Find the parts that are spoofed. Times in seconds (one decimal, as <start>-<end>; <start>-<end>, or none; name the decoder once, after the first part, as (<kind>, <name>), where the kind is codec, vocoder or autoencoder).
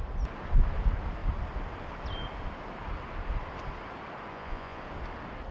4.3-4.8 (vocoder, Vocos)